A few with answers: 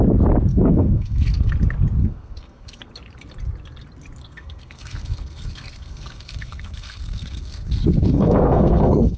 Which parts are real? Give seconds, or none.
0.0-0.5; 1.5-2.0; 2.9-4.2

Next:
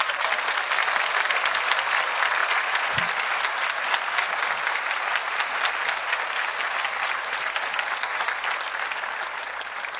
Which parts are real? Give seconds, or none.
0.0-2.4; 3.0-10.0

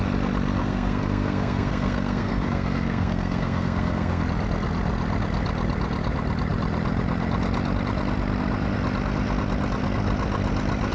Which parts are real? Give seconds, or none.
0.0-0.6; 4.2-10.9

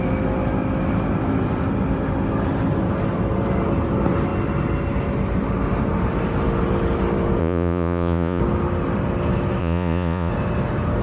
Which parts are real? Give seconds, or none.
0.0-7.4; 8.4-9.6; 10.3-11.0

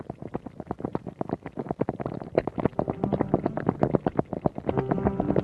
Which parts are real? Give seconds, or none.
0.0-0.9; 1.6-5.4